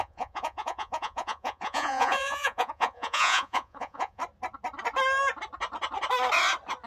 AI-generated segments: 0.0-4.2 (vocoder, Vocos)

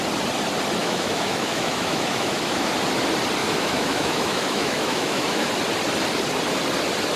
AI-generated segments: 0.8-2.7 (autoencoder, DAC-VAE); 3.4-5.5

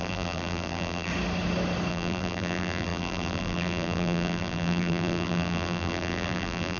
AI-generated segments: 0.0-1.1 (vocoder, BigVGAN v2); 1.9-6.8

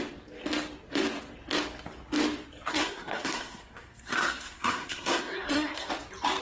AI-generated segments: 2.7-5.9 (codec, SNAC)

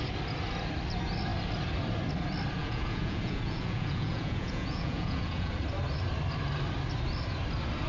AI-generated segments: 2.6-5.5 (vocoder, Vocos)

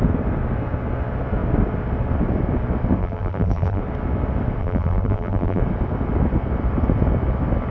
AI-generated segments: 3.0-3.8 (vocoder, BigVGAN v2); 4.6-5.6